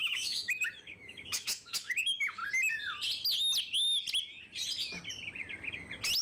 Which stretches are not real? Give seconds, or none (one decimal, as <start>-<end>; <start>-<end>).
0.0-2.4